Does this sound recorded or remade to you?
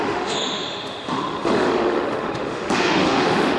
remade